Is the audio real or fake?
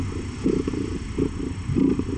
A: real